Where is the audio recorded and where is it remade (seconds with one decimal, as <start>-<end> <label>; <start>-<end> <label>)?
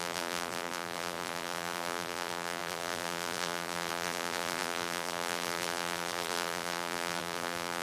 0.0-7.8 remade